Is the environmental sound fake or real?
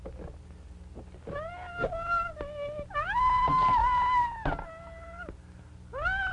real